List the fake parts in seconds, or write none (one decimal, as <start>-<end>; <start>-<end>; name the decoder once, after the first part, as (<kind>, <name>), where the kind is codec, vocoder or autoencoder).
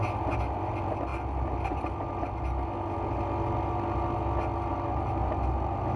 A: none